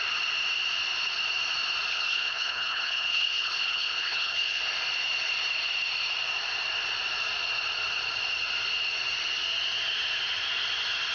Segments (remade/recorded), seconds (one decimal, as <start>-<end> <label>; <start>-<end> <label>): 0.0-1.9 recorded; 1.9-4.6 remade; 4.6-11.1 recorded